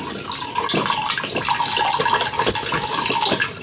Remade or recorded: recorded